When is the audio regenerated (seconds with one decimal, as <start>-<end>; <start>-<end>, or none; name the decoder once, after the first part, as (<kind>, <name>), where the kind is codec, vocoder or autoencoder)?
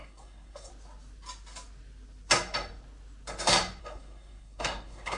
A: 0.0-0.7 (codec, SNAC); 3.8-5.2